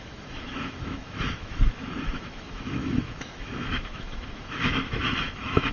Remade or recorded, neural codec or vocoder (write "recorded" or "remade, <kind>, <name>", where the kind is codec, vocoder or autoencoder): remade, autoencoder, DAC-VAE